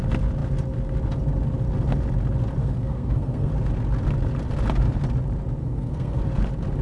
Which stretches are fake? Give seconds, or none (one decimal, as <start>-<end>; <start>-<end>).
2.6-3.5; 5.6-6.2